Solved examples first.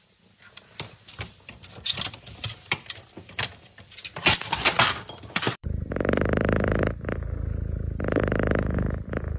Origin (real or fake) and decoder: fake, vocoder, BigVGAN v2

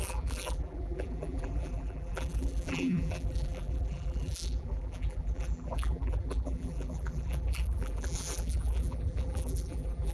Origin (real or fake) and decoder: fake, vocoder, BigVGAN v2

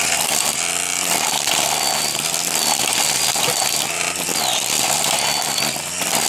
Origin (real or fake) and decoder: real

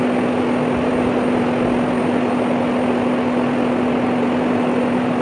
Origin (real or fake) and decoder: real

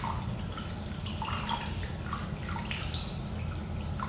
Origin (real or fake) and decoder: real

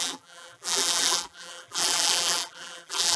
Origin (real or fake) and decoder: fake, vocoder, BigVGAN v2